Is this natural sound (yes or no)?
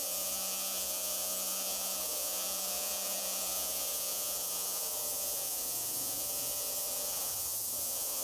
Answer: no